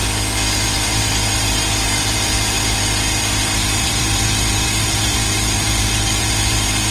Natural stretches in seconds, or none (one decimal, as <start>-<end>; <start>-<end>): 0.0-0.5